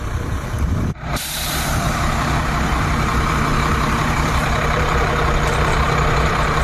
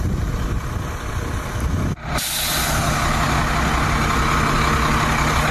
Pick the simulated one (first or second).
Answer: first